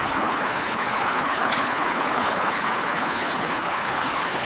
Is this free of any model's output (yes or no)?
no